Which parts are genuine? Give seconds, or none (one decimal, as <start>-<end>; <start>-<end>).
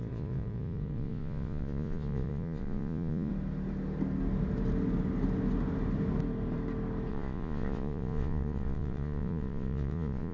3.3-7.1